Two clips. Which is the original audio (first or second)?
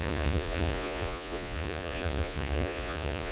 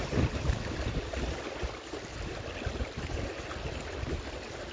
second